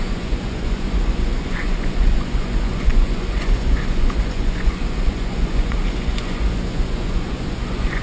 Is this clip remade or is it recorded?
remade